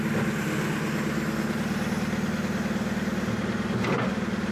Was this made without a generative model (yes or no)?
yes